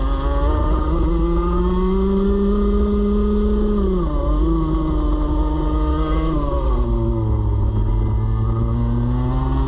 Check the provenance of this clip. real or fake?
real